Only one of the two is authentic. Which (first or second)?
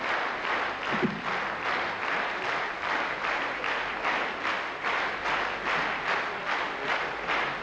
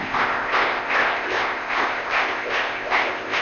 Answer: first